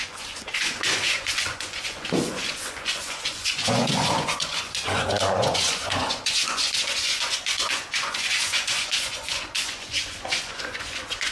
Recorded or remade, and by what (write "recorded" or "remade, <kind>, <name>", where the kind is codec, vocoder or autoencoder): remade, vocoder, Vocos